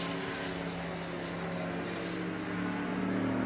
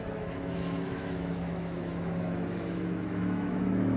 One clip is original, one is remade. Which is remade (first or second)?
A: second